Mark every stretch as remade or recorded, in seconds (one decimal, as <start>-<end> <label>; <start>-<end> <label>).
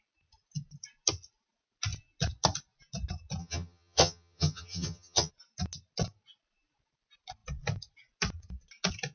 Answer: 0.0-3.4 recorded; 3.4-5.3 remade; 5.3-9.1 recorded